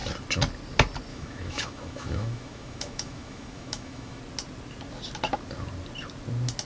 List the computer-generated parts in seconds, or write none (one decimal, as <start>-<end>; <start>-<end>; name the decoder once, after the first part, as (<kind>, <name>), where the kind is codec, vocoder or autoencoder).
1.1-4.2 (autoencoder, DAC-VAE)